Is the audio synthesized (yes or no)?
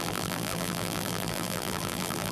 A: yes